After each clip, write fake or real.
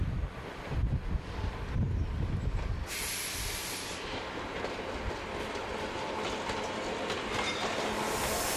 real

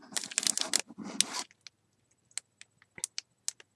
real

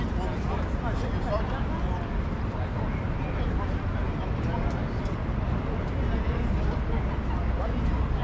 real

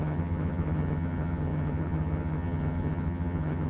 fake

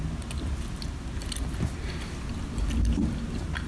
real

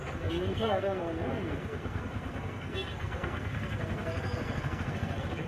fake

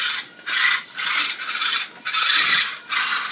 real